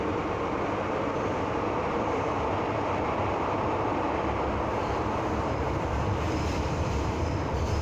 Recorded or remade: remade